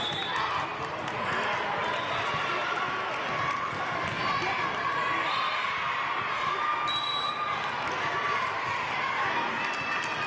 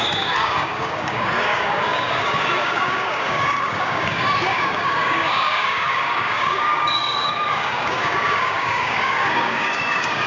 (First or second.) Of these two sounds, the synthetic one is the second